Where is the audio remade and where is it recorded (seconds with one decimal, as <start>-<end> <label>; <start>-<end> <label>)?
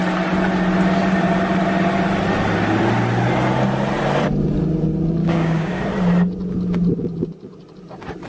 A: 0.0-5.2 recorded; 5.2-5.8 remade; 5.8-8.3 recorded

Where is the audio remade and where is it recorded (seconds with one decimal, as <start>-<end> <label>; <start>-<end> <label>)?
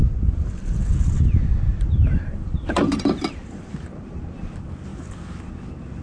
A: 0.0-1.7 recorded; 1.7-4.2 remade; 4.2-4.9 recorded; 4.9-5.5 remade; 5.5-6.0 recorded